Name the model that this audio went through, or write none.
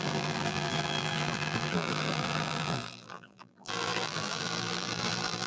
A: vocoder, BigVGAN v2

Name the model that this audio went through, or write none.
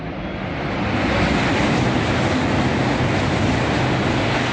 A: none